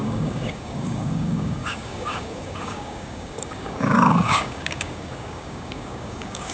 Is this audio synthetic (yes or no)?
yes